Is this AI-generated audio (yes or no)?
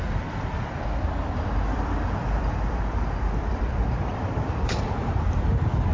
yes